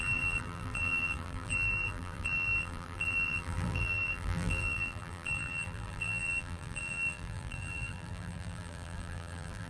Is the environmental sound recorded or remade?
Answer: remade